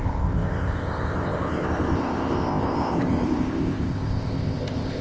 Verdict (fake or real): fake